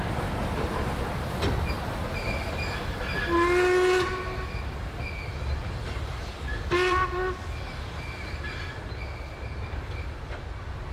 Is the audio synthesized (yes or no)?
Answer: no